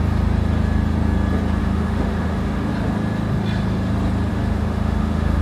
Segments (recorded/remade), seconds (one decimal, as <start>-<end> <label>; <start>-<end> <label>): 0.0-1.6 recorded; 1.6-2.7 remade; 2.7-4.3 recorded; 4.3-5.4 remade